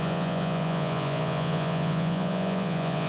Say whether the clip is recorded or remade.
remade